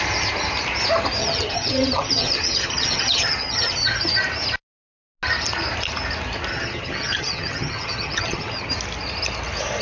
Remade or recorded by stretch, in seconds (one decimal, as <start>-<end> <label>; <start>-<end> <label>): 0.0-1.2 recorded; 1.2-4.1 remade; 4.1-6.5 recorded; 6.5-8.7 remade; 8.7-9.8 recorded